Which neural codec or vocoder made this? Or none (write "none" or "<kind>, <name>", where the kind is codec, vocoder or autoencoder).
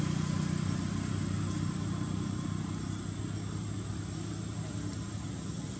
none